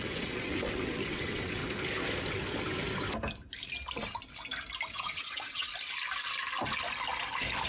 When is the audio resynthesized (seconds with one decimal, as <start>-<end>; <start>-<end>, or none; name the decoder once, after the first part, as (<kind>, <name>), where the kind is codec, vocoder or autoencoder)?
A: 0.0-1.6 (vocoder, WaveNeXt); 4.9-5.7